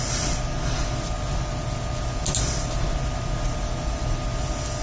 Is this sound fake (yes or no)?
no